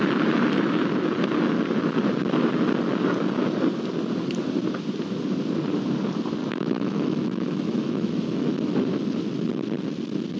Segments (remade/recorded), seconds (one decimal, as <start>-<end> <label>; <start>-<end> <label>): 0.0-6.4 recorded; 6.4-8.8 remade; 8.8-10.4 recorded